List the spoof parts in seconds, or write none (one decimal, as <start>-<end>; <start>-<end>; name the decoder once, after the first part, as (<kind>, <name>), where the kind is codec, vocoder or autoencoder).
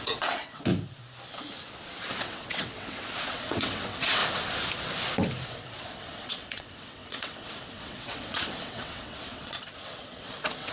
0.0-0.7 (vocoder, WaveNeXt); 2.2-4.2; 5.5-10.7